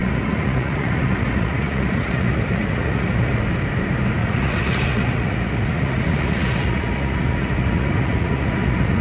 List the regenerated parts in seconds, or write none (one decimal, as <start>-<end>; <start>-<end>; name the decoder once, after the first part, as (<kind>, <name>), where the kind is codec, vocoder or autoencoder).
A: 0.0-3.3 (vocoder, Vocos); 4.2-9.0